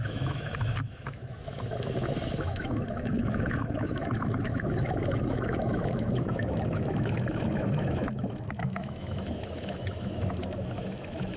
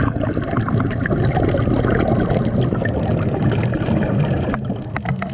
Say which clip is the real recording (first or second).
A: second